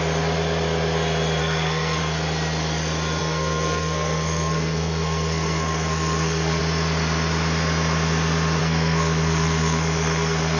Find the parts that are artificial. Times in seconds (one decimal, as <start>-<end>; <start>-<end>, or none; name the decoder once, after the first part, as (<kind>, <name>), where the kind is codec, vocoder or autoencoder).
1.4-2.0 (codec, SNAC); 3.2-6.6; 8.6-10.6